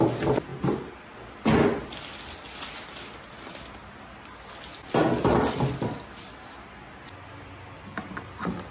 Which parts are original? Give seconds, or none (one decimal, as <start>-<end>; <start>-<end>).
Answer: 0.0-8.7